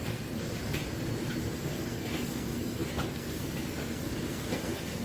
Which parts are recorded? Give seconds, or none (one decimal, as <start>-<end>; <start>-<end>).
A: 0.8-1.6